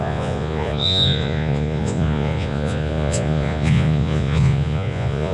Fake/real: fake